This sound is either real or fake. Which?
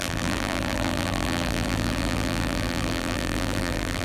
fake